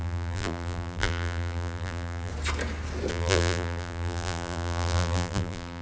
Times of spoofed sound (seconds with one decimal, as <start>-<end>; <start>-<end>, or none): 0.0-2.3; 3.1-5.8